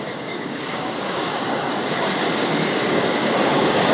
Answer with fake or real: fake